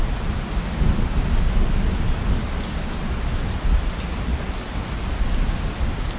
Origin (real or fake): real